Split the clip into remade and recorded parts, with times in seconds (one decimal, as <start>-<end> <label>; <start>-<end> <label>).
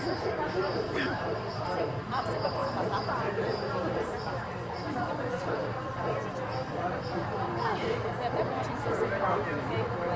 0.0-10.2 recorded